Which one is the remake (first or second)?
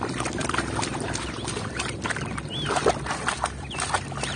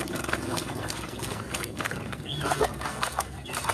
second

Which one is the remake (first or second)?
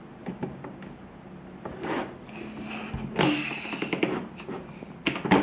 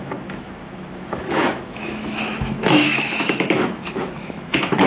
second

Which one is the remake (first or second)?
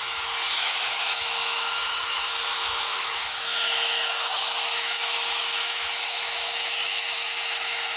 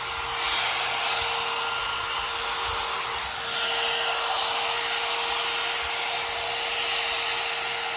first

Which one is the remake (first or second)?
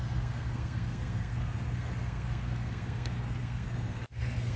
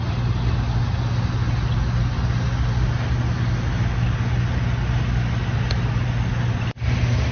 first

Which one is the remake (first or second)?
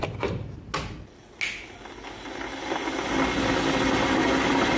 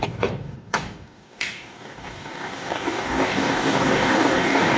second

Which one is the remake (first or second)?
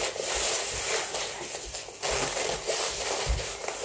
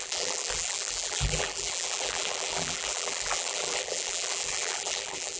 second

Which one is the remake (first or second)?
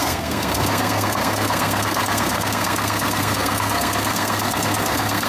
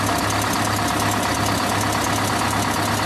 first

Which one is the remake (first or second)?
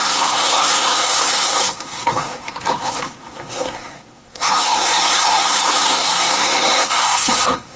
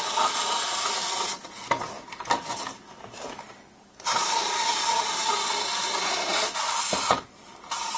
first